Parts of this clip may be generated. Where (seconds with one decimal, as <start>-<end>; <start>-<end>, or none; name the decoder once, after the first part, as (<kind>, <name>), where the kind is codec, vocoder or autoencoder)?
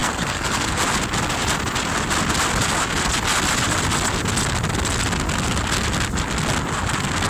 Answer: 0.0-0.8 (codec, SNAC)